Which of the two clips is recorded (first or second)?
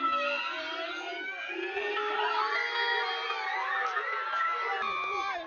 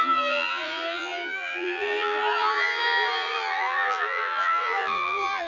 first